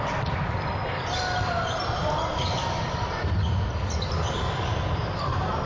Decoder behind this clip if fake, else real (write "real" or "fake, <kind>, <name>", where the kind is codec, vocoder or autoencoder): real